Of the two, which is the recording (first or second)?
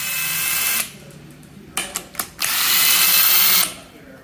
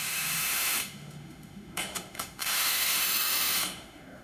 first